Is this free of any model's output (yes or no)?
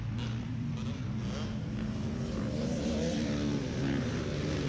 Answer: yes